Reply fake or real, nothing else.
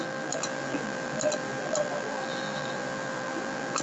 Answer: fake